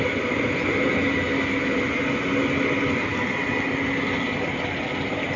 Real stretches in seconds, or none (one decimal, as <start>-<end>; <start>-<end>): 0.0-5.4